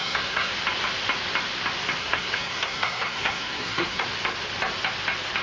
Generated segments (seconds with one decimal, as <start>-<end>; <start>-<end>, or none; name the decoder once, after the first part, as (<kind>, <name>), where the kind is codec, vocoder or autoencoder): 0.0-0.5 (codec, SNAC); 2.0-4.0